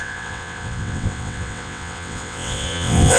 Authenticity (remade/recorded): remade